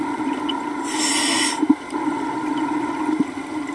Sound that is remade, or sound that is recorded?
recorded